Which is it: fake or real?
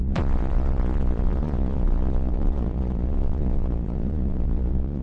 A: fake